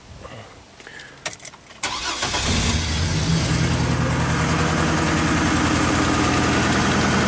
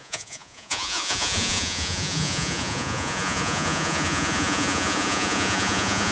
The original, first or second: first